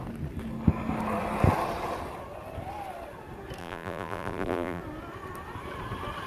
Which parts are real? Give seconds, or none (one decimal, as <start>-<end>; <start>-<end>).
0.0-3.6; 4.8-6.3

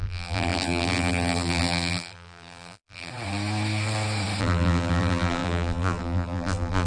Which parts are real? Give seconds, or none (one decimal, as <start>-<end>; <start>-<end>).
3.1-4.4

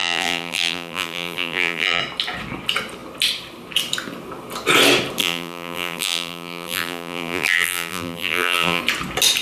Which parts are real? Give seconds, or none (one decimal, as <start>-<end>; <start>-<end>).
2.0-5.2; 8.8-9.4

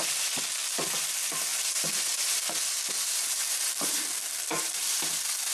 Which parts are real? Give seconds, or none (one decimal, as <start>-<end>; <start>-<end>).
0.0-1.5; 2.4-3.4; 4.0-4.5; 5.1-5.5

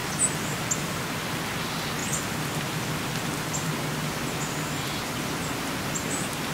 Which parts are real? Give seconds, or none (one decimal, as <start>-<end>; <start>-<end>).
1.0-2.0; 4.2-6.5

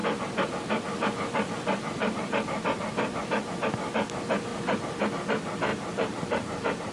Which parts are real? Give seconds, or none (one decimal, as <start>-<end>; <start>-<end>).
0.0-5.7

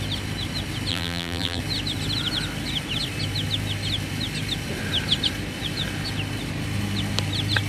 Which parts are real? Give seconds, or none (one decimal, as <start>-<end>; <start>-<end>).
0.0-0.9; 1.6-7.7

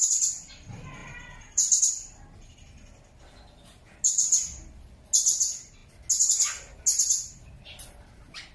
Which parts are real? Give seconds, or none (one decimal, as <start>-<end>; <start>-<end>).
0.0-1.0; 1.8-8.5